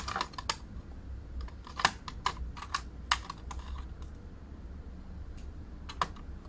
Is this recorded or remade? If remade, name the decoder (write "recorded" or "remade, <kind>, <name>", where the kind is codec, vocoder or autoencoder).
recorded